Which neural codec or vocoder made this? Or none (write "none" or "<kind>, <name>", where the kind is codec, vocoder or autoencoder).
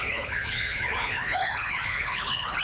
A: codec, HILCodec